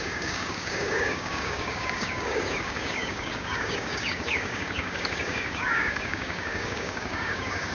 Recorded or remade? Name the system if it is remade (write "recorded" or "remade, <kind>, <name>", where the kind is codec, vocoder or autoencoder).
remade, codec, DAC